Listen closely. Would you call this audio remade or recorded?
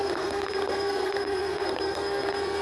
remade